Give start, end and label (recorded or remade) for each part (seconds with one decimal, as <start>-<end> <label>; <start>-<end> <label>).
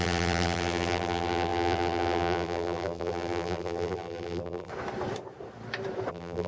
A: 0.0-4.7 remade; 4.7-6.1 recorded; 6.1-6.5 remade